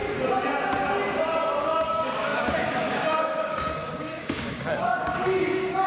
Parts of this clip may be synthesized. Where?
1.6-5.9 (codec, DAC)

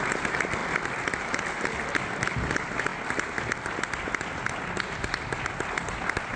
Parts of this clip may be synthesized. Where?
none